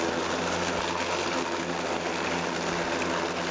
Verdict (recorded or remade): recorded